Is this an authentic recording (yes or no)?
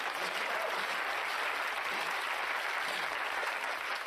yes